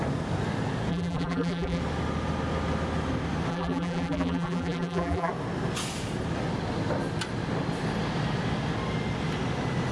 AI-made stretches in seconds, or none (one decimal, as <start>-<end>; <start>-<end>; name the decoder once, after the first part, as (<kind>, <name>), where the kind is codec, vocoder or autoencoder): 0.9-1.8 (vocoder, BigVGAN v2); 3.5-5.3